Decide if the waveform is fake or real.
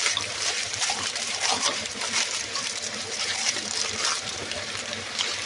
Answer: fake